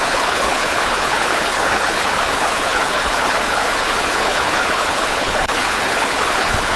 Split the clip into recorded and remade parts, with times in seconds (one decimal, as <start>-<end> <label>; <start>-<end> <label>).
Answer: 0.0-6.8 remade

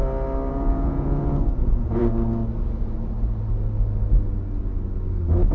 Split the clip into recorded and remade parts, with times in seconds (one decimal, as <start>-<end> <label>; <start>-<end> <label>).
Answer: 0.0-0.5 recorded; 0.5-2.0 remade; 2.0-5.5 recorded

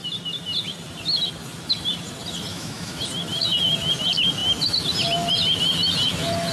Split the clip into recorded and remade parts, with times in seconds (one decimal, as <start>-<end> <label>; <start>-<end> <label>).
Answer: 0.0-2.5 recorded; 2.5-3.0 remade; 3.0-6.5 recorded